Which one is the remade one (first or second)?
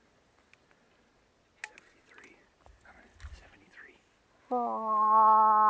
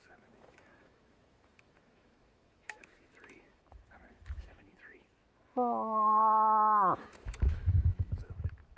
second